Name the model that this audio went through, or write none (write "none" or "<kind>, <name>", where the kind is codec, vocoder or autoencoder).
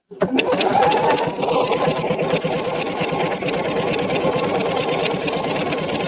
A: none